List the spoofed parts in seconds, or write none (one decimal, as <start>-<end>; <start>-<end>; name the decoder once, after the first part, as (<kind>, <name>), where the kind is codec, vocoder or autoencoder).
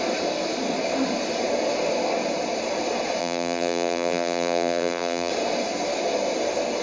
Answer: 3.2-5.3 (vocoder, BigVGAN v2)